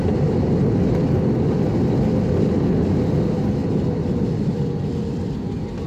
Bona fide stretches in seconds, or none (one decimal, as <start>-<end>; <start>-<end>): 0.0-5.9